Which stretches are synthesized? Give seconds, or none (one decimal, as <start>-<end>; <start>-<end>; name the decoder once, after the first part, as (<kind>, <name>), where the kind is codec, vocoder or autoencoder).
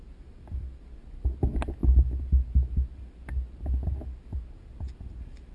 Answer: none